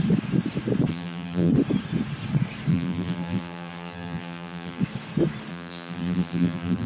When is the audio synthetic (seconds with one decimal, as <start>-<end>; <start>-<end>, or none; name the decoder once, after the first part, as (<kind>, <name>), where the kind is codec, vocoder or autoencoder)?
0.9-1.5 (vocoder, BigVGAN v2); 2.7-4.8; 5.5-6.9